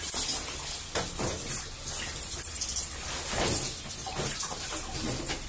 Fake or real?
real